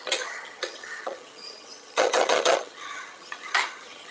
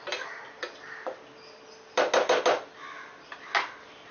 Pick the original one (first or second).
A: second